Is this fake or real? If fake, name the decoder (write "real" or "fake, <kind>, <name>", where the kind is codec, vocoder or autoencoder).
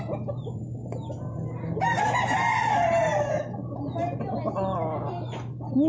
real